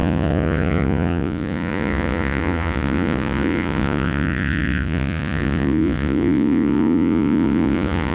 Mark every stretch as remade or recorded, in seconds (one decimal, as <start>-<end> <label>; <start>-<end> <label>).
0.0-8.1 remade